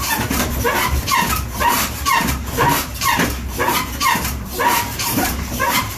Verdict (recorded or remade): remade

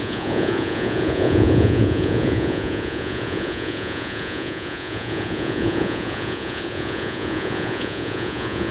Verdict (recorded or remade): remade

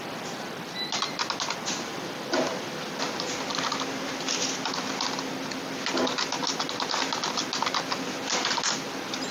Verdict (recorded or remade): recorded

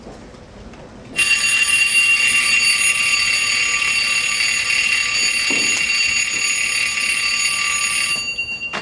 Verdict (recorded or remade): recorded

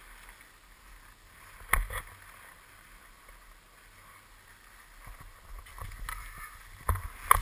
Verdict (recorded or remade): recorded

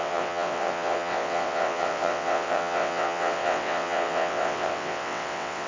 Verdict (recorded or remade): remade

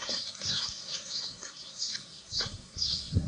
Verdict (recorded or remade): remade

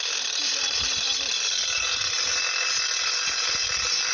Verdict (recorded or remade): remade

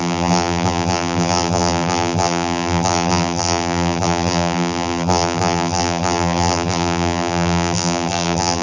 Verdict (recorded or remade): remade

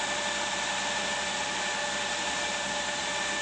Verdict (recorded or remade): remade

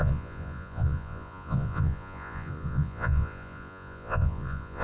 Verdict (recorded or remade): remade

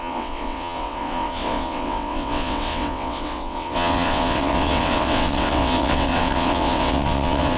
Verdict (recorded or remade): remade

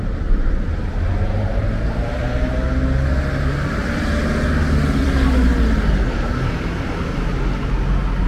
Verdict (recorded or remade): recorded